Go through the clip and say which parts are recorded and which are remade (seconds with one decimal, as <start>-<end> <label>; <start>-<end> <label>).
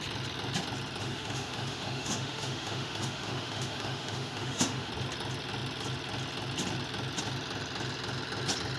0.0-1.0 recorded; 1.0-4.9 remade; 4.9-8.8 recorded